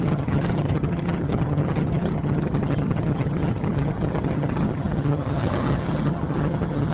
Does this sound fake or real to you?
fake